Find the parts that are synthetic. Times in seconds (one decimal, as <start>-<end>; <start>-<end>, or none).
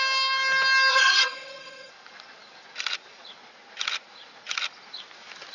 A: 0.9-1.9